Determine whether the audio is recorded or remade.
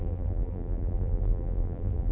remade